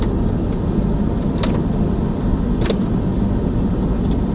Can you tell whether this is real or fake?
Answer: real